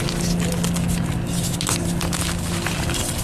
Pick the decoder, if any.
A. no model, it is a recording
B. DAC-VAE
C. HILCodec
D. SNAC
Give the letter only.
A